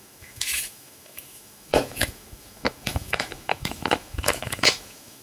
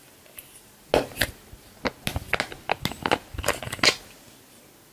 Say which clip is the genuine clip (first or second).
second